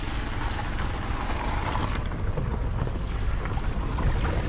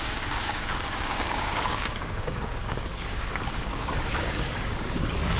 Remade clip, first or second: second